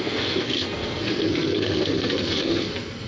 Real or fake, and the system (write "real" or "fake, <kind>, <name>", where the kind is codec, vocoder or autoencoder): fake, codec, SNAC